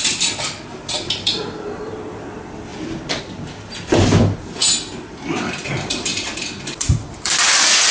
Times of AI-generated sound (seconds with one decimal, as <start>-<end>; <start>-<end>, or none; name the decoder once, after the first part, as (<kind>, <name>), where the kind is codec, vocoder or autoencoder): 0.0-2.7 (vocoder, BigVGAN v2); 3.2-4.6; 5.4-7.9